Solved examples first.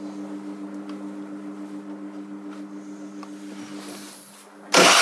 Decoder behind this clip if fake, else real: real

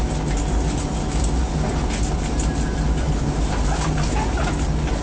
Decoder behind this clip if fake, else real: real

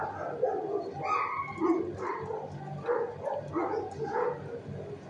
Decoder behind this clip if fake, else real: real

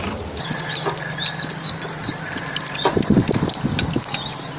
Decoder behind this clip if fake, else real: real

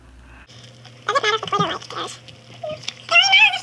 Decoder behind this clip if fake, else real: real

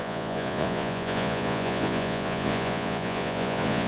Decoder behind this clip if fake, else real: fake, vocoder, Vocos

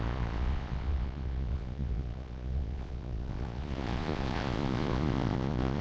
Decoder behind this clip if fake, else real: fake, vocoder, Vocos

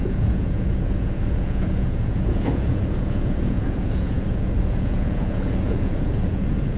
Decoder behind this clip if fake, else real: fake, vocoder, Vocos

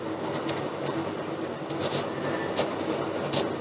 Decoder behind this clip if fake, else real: real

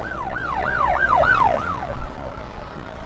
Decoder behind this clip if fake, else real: fake, vocoder, Vocos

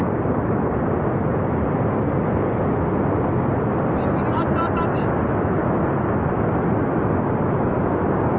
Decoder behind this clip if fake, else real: real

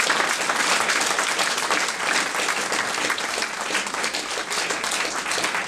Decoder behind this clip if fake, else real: real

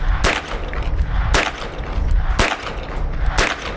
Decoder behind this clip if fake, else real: real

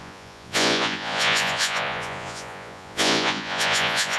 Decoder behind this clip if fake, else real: fake, vocoder, Vocos